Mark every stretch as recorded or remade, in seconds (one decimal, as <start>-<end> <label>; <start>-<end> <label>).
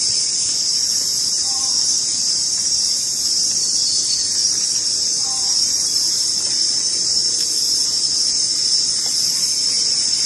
0.0-4.2 remade; 4.2-5.6 recorded; 5.6-10.3 remade